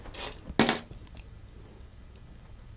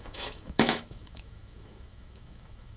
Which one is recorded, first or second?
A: first